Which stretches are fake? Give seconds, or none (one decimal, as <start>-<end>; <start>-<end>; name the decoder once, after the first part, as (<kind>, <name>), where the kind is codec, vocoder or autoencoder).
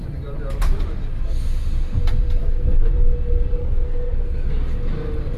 2.4-2.9 (codec, SNAC); 3.6-4.5